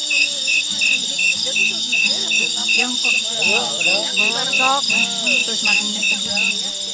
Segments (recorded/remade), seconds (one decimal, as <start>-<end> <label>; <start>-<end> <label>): 0.0-0.6 remade; 0.6-1.1 recorded; 1.1-2.9 remade; 2.9-3.5 recorded; 3.5-4.2 remade; 4.2-5.4 recorded; 5.4-6.1 remade; 6.1-6.9 recorded